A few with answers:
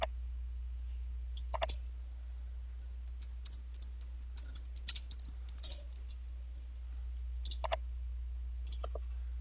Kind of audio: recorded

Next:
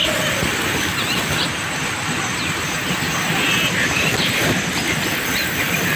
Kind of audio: recorded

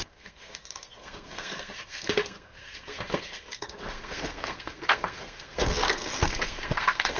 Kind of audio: remade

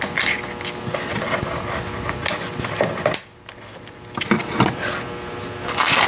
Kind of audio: recorded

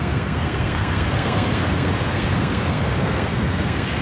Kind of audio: remade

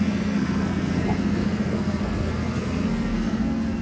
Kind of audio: remade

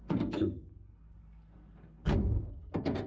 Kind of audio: remade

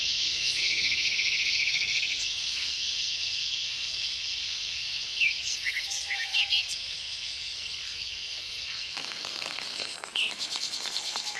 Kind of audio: remade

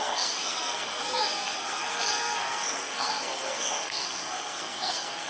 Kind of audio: remade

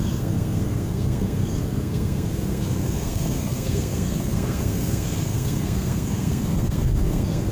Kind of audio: remade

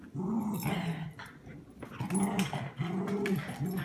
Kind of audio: recorded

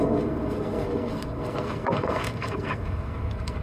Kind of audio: remade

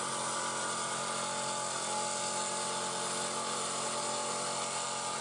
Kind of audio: recorded